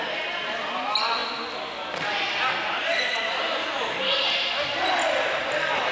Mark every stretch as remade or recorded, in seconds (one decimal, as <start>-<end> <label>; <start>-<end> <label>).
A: 0.0-5.9 recorded